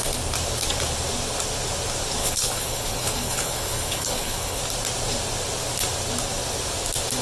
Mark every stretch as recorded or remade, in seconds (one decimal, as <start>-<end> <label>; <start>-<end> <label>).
0.0-2.2 recorded; 2.2-4.6 remade; 4.6-7.2 recorded